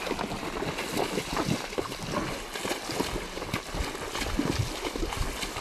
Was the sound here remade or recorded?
recorded